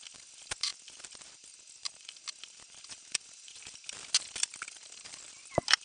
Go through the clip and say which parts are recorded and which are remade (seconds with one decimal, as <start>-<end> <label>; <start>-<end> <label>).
0.0-5.8 recorded